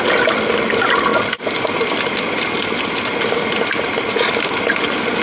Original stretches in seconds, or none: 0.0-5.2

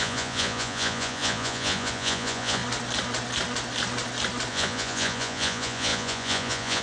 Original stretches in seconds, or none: 2.6-4.5